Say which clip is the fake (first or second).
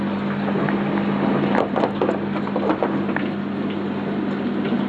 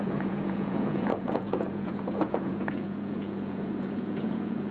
second